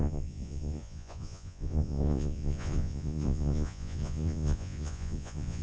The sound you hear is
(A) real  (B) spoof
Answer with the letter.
B